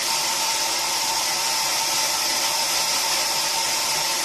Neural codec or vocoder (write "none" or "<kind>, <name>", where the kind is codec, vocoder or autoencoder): none